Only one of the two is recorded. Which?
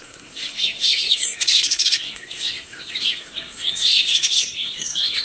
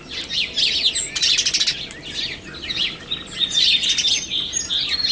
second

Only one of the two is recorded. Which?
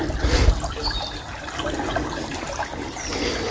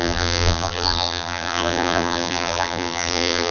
first